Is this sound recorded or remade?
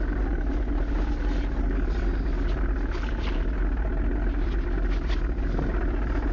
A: recorded